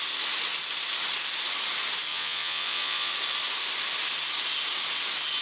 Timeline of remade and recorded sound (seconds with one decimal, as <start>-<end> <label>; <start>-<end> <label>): 0.0-2.1 recorded; 2.1-3.1 remade; 3.1-5.4 recorded